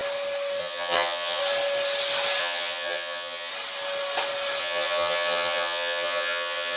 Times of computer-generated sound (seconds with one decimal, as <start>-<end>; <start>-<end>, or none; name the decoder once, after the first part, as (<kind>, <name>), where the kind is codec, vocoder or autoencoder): 0.6-1.4 (vocoder, HiFi-GAN); 2.4-3.5; 4.6-6.8

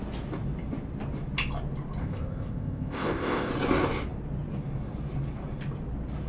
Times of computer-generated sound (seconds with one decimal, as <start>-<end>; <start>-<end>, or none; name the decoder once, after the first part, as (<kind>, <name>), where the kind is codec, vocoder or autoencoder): 2.0-3.5 (codec, ZipCodec)